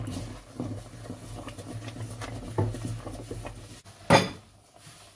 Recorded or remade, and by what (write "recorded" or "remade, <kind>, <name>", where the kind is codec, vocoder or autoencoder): recorded